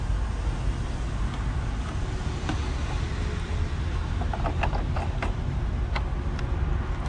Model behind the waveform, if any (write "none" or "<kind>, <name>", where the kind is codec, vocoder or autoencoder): none